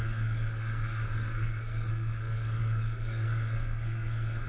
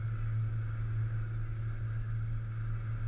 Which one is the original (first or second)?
second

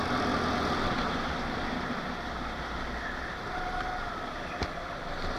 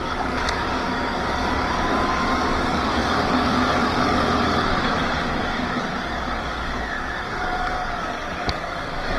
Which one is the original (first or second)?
first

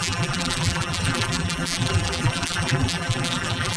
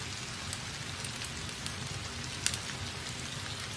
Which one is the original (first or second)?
second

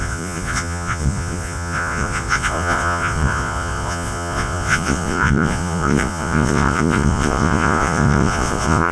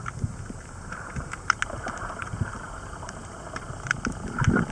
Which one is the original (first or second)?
second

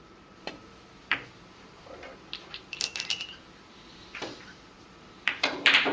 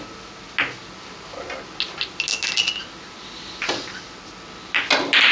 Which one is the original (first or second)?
second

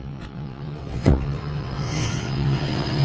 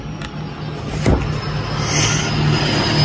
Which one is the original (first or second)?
second